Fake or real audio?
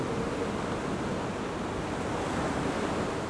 real